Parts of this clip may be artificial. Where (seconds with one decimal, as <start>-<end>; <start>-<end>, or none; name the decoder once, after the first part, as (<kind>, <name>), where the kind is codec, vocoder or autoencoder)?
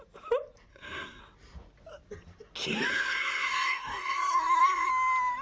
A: 0.7-1.2 (codec, SNAC); 2.9-4.9